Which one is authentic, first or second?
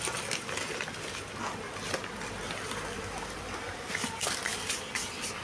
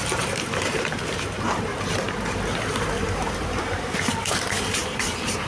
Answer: first